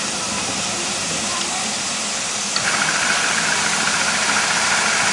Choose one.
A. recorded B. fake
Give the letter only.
B